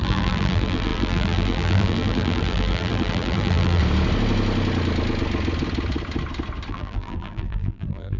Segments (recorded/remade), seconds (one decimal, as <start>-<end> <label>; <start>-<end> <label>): 0.0-3.8 remade; 3.8-6.7 recorded; 6.7-8.2 remade